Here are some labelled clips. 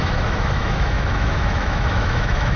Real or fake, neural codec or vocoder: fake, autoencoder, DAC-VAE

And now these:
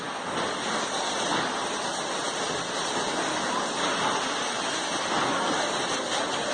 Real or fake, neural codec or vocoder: real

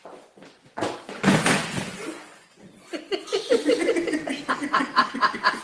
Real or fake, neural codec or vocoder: fake, vocoder, Vocos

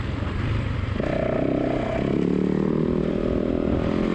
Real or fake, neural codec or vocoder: real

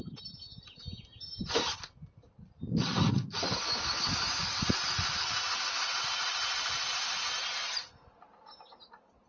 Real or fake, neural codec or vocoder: real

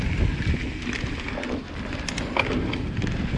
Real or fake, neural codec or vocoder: real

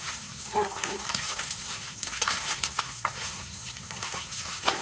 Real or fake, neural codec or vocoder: fake, codec, SNAC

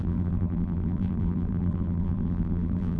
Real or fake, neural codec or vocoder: fake, vocoder, BigVGAN v2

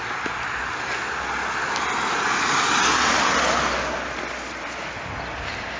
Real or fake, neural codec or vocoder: real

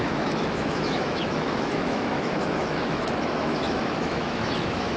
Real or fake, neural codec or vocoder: fake, autoencoder, DAC-VAE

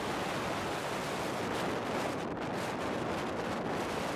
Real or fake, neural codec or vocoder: real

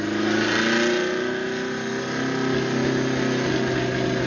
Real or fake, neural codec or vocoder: real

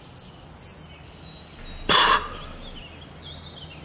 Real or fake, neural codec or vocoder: real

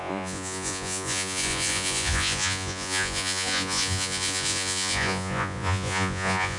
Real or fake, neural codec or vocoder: fake, vocoder, Vocos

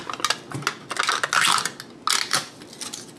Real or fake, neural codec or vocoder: real